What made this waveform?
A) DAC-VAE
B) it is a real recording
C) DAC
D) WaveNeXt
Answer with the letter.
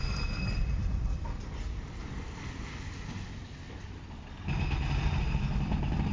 B